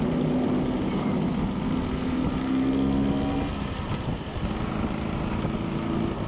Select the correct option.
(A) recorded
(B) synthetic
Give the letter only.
A